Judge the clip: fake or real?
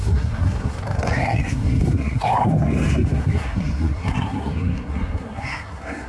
fake